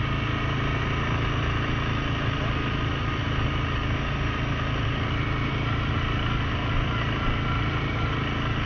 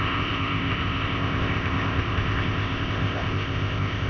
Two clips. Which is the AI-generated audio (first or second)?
second